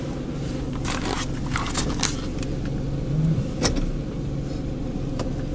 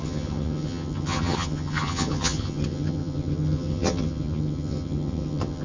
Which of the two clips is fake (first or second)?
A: second